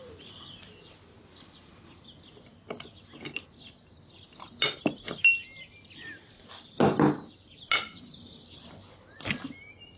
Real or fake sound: real